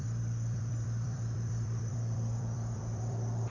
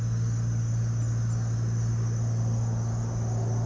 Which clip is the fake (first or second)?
first